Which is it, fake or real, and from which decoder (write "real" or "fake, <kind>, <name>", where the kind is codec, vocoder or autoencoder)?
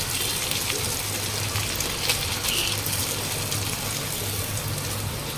real